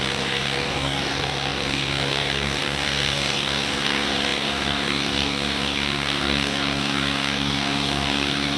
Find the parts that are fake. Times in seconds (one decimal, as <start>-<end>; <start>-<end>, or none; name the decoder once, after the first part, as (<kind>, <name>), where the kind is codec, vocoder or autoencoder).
0.0-8.6 (codec, DAC)